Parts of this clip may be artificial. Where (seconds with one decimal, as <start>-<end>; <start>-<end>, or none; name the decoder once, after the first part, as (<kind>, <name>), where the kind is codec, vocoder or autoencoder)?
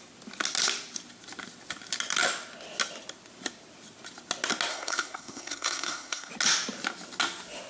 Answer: 4.7-6.3 (codec, SNAC)